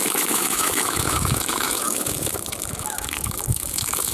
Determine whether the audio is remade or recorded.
remade